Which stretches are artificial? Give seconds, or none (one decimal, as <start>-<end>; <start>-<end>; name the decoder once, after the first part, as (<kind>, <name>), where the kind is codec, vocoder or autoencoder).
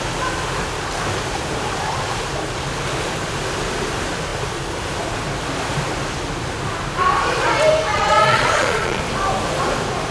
7.9-9.0 (vocoder, Vocos)